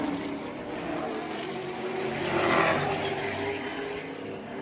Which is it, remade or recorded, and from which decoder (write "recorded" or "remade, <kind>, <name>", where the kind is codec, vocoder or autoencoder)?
recorded